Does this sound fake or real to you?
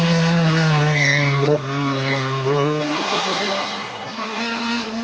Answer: fake